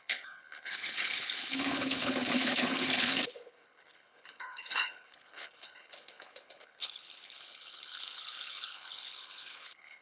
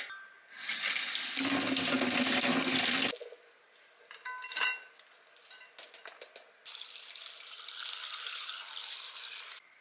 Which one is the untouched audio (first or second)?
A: second